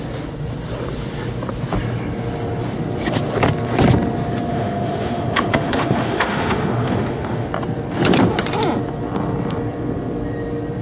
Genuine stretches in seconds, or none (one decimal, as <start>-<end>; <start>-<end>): 0.0-4.5; 7.5-10.8